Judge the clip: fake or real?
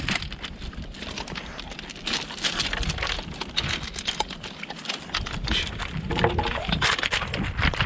real